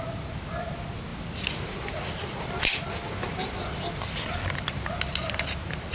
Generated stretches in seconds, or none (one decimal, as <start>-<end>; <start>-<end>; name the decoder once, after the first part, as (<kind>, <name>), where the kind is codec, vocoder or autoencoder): none